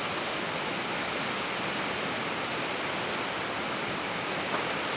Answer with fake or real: real